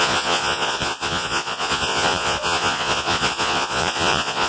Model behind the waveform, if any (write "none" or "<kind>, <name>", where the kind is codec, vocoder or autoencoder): vocoder, Vocos